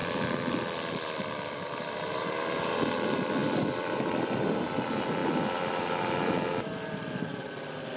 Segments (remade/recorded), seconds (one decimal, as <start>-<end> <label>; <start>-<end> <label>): 0.0-3.4 recorded; 3.4-4.8 remade; 4.8-5.2 recorded; 5.2-5.9 remade; 5.9-8.0 recorded